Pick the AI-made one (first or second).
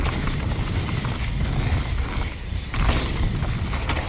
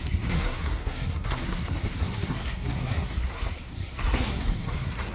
second